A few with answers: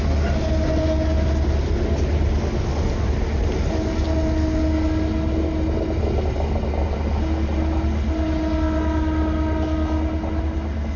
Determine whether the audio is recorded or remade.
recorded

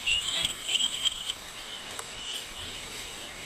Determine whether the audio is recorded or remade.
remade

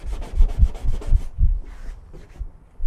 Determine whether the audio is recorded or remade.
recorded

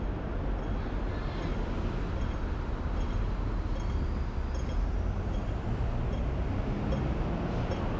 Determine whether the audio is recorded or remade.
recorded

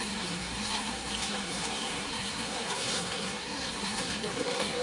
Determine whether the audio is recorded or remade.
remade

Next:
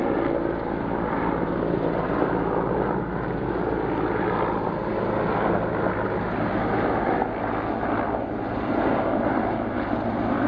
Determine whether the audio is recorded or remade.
recorded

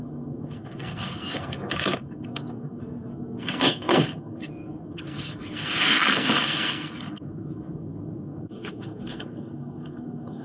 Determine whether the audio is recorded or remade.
remade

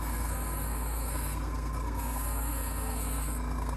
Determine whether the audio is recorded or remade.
remade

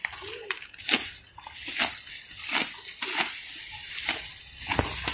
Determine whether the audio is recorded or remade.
recorded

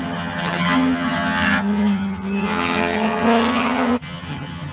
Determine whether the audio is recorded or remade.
remade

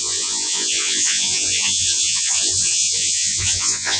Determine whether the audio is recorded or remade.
remade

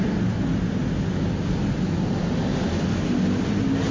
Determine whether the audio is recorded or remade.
recorded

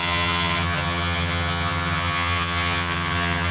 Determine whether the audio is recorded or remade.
remade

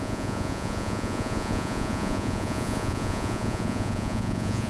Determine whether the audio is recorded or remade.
remade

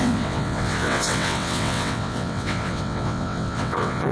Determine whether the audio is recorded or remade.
remade